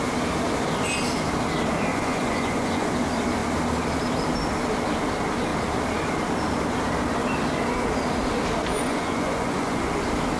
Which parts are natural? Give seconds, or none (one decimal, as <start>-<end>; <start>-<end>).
0.0-1.9; 2.9-8.7; 9.9-10.4